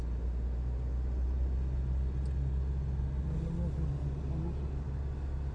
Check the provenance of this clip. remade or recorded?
recorded